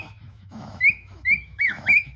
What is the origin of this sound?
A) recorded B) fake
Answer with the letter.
B